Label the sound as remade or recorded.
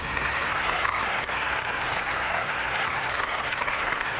remade